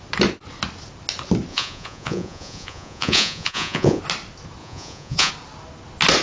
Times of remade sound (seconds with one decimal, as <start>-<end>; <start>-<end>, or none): 1.5-4.0; 4.6-5.3